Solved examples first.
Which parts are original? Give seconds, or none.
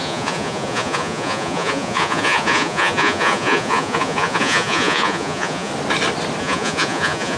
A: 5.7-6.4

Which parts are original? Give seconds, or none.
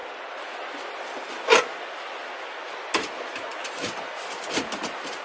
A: 0.0-5.2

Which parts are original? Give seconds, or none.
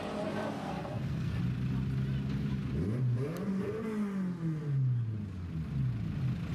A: 0.0-0.6; 1.4-6.5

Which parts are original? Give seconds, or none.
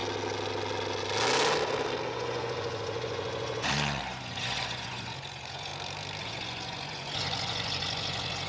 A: 0.0-2.1; 5.7-6.2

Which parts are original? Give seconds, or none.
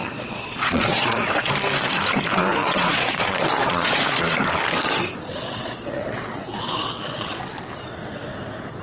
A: 1.5-2.6; 4.2-5.5; 7.4-8.8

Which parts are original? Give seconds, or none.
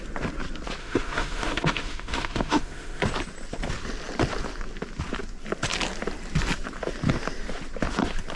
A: 0.0-0.8; 3.0-8.4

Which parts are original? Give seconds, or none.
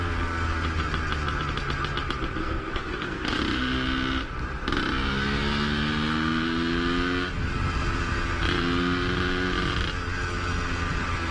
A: 0.0-2.4; 3.4-11.3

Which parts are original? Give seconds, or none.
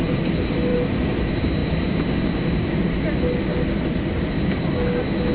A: 0.0-5.3